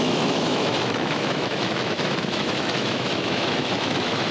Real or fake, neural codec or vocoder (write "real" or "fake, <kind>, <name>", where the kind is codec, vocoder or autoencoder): fake, autoencoder, DAC-VAE